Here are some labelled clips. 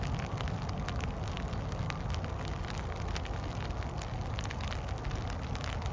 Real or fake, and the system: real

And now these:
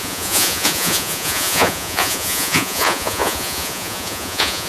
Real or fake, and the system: fake, vocoder, Vocos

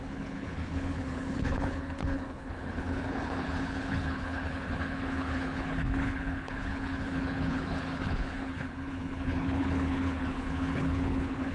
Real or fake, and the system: fake, codec, HILCodec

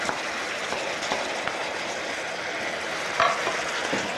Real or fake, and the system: real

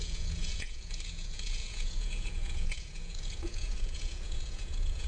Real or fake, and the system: fake, vocoder, Vocos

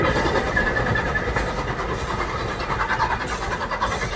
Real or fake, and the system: real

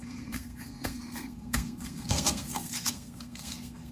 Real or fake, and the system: fake, codec, SNAC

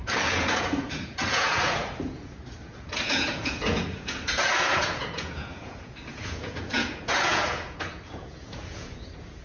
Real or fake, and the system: fake, vocoder, Vocos